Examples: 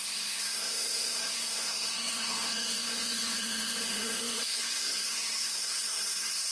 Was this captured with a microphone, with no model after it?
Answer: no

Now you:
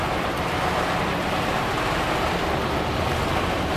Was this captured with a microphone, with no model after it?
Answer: yes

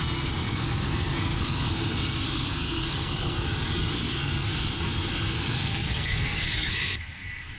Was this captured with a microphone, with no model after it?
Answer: no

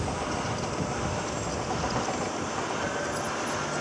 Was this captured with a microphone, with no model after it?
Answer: yes